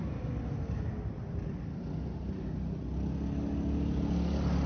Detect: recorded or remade recorded